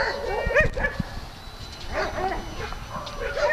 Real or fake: real